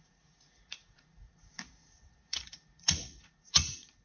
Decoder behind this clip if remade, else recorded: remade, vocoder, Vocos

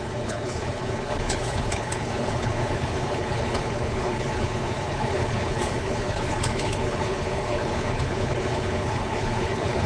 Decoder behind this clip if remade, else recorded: remade, codec, HILCodec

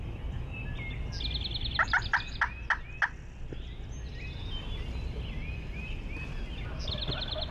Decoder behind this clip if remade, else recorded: recorded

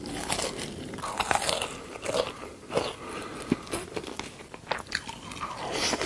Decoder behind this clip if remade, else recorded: recorded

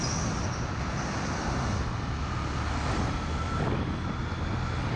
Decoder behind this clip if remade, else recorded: recorded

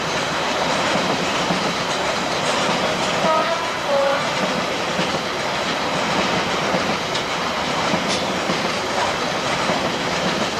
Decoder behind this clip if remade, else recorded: remade, vocoder, BigVGAN v2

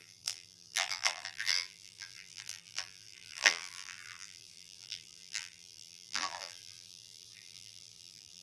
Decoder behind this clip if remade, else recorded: remade, vocoder, BigVGAN v2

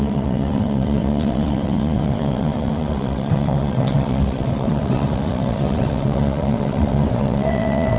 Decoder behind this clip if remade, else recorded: remade, vocoder, WaveNeXt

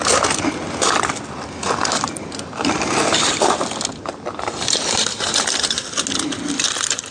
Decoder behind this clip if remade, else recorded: recorded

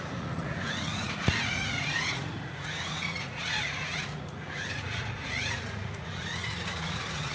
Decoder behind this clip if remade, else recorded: remade, vocoder, Vocos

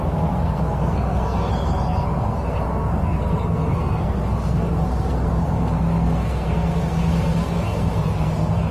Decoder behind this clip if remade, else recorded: remade, codec, SNAC